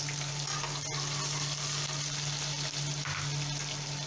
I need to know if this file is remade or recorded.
recorded